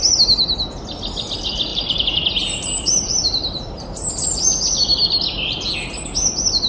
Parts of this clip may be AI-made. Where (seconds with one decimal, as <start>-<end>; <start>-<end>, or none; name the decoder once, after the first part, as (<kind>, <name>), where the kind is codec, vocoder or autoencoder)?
1.7-4.1 (vocoder, BigVGAN v2)